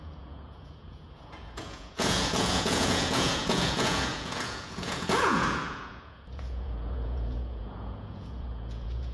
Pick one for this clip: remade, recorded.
remade